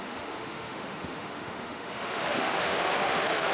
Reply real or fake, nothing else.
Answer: fake